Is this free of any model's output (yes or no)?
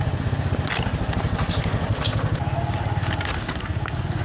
yes